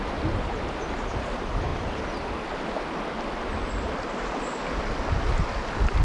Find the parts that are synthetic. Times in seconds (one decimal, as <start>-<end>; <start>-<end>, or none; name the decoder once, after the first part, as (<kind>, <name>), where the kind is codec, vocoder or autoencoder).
none